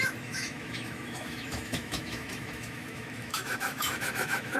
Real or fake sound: fake